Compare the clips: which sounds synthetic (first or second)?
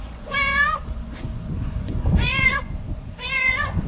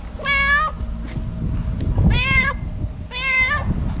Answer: first